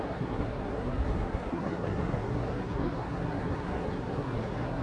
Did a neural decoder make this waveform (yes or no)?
yes